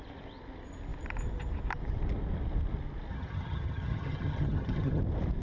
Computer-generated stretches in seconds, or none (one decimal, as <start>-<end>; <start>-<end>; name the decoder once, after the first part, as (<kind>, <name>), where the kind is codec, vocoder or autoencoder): 3.1-5.0 (vocoder, HiFi-GAN)